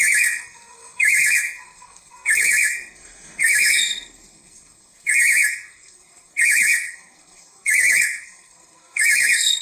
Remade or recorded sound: remade